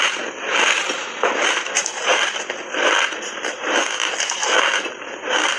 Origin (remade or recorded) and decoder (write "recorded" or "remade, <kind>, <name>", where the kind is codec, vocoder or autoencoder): recorded